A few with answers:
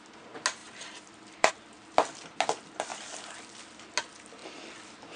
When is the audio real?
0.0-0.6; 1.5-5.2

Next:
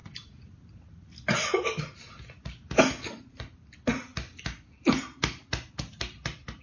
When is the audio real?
2.8-6.6

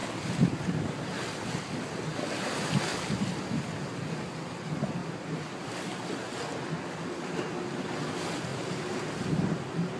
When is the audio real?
0.5-2.9; 3.6-8.5; 9.3-10.0

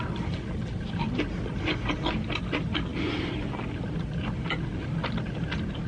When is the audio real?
0.0-5.9

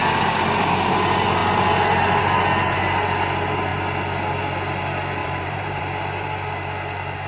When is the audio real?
0.0-5.2; 5.8-7.3

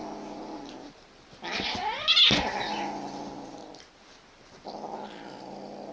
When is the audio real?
0.0-5.9

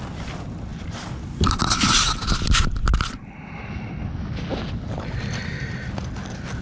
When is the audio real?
0.0-6.6

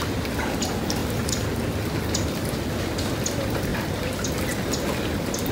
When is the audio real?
0.0-1.0; 1.5-5.5